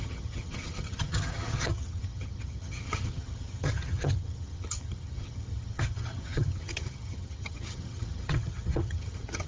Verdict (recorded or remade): remade